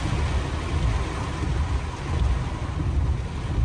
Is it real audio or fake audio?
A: real